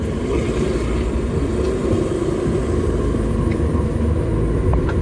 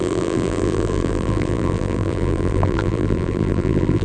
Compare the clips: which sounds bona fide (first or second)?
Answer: first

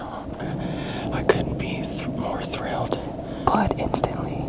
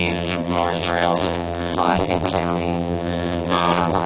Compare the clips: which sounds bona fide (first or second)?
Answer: first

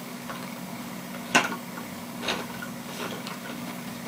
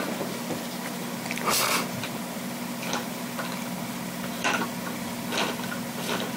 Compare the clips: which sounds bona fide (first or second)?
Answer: second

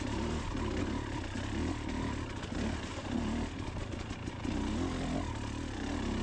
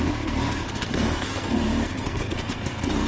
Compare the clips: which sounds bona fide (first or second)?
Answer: first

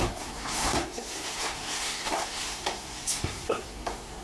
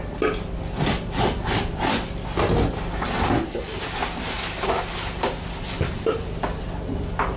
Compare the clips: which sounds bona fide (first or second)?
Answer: second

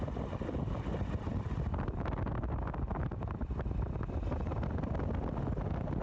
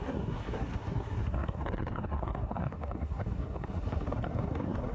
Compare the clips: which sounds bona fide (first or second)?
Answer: first